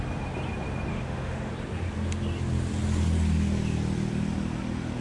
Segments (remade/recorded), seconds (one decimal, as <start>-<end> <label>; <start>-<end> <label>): 0.0-0.9 recorded; 0.9-1.5 remade; 1.5-5.0 recorded